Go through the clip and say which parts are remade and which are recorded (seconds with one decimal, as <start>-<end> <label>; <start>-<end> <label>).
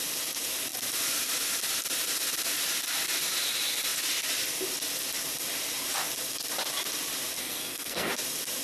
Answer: 0.0-7.4 recorded; 7.4-8.1 remade; 8.1-8.6 recorded